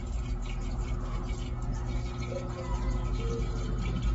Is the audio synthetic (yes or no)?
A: no